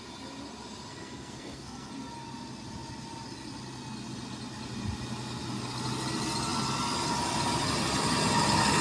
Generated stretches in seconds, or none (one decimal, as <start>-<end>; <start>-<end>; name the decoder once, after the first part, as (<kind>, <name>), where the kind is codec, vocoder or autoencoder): 0.9-1.9 (codec, SNAC)